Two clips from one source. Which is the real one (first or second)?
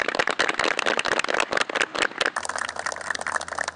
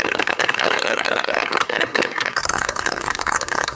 first